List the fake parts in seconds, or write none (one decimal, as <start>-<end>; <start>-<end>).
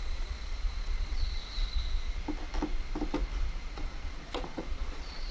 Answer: 0.0-1.4; 3.6-5.3